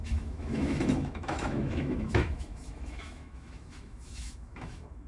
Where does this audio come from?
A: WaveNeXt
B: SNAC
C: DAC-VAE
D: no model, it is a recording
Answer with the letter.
C